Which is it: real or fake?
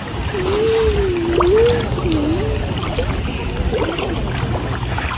real